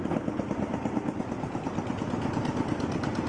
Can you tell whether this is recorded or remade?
recorded